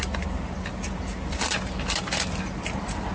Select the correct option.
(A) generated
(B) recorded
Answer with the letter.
A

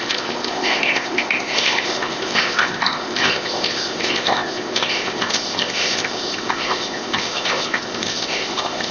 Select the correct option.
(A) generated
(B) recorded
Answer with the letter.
A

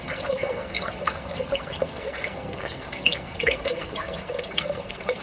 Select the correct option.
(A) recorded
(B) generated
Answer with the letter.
B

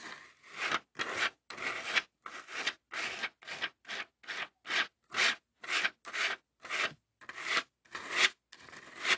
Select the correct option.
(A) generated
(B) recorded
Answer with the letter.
B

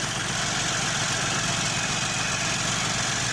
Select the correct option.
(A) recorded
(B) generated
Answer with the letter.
A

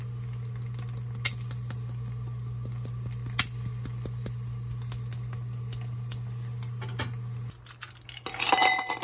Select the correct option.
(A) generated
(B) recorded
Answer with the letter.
B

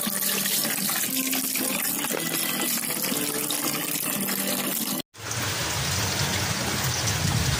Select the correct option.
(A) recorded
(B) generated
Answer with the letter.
A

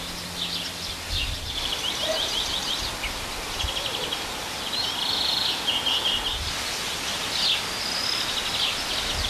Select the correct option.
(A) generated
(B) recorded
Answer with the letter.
B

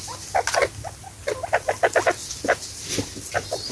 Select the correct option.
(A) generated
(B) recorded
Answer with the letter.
B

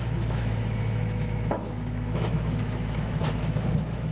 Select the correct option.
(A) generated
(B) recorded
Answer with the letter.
A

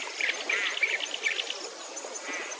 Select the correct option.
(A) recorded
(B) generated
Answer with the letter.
A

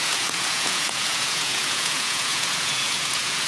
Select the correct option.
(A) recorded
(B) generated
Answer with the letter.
B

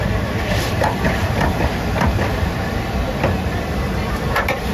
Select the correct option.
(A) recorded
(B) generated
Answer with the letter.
B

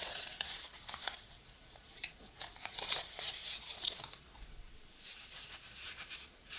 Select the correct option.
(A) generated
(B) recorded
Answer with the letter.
A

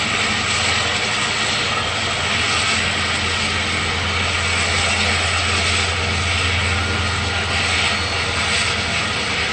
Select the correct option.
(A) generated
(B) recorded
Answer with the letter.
B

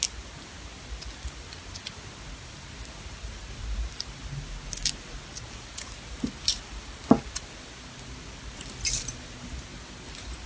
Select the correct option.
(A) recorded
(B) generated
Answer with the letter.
A